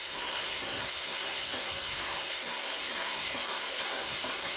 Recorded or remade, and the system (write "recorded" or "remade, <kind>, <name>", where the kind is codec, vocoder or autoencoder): remade, codec, SNAC